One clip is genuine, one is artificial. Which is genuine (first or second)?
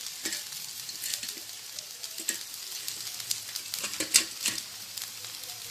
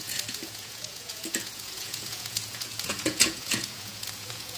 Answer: first